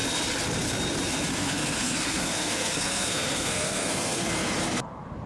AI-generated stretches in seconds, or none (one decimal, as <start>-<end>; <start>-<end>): 1.3-4.5